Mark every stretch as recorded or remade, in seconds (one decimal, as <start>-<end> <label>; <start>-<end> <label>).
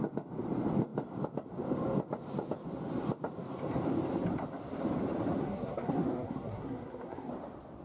0.0-5.4 recorded; 5.4-7.3 remade; 7.3-7.8 recorded